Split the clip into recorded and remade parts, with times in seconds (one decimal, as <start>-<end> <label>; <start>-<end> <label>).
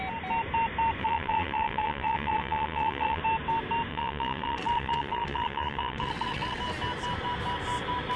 0.0-1.0 recorded; 1.0-3.2 remade; 3.2-3.9 recorded; 3.9-6.6 remade; 6.6-8.2 recorded